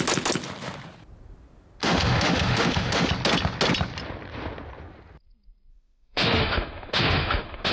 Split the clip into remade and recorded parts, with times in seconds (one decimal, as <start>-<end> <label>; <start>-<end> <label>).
0.0-1.8 recorded; 1.8-3.1 remade; 3.1-5.7 recorded; 5.7-7.7 remade